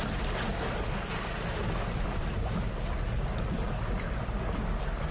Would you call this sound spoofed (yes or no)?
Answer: no